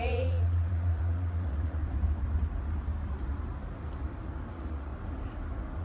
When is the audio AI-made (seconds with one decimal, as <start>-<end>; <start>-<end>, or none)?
0.0-1.8; 4.5-4.9